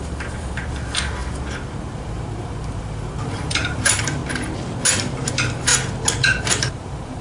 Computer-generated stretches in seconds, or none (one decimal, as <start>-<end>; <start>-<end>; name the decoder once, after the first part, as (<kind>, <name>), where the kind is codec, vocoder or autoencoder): 0.0-4.2 (vocoder, BigVGAN v2); 5.3-5.7; 6.4-7.2